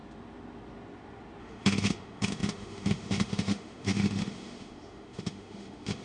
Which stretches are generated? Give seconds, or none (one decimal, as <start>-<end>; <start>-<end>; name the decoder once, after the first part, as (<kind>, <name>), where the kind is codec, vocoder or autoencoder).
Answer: 1.4-6.0 (autoencoder, DAC-VAE)